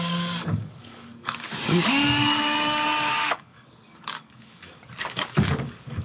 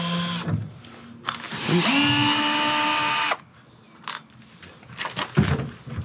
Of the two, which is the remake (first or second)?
first